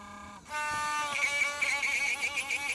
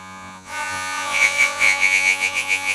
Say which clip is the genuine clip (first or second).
first